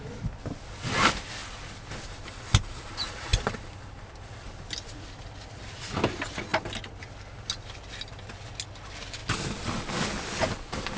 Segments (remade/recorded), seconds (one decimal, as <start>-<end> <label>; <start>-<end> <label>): 0.0-1.4 recorded; 1.4-2.4 remade; 2.4-3.3 recorded; 3.3-4.5 remade; 4.5-11.0 recorded